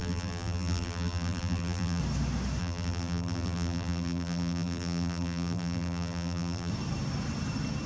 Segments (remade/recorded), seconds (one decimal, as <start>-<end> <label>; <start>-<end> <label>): 0.0-2.0 remade; 2.0-2.6 recorded; 2.6-6.7 remade; 6.7-7.9 recorded